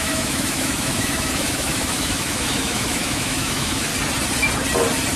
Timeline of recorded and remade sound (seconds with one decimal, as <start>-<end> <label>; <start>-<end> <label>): 0.0-3.9 remade; 3.9-5.2 recorded